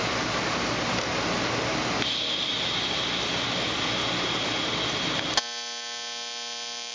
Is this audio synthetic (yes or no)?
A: no